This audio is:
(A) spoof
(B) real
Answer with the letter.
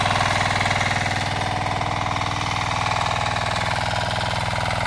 B